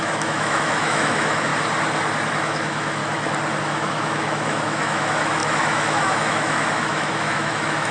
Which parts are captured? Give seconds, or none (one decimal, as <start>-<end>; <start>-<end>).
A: 1.5-2.4; 3.0-3.6